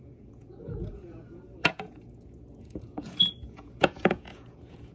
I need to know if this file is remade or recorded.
remade